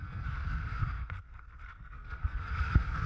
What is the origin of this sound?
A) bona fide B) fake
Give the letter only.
B